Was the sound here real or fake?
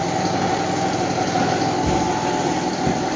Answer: real